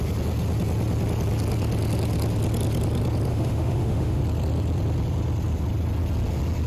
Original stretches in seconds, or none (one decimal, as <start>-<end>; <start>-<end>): 0.0-3.3; 4.2-6.7

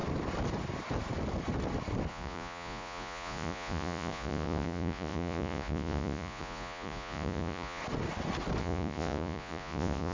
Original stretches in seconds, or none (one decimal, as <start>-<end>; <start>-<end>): 0.0-2.1; 7.8-8.6

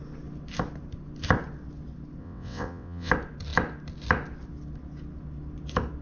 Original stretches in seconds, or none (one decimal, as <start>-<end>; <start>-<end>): 0.0-2.2; 3.1-6.0